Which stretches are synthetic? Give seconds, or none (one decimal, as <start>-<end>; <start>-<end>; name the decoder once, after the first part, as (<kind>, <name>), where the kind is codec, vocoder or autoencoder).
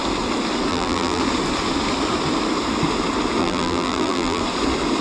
0.7-1.2 (vocoder, BigVGAN v2); 3.4-4.4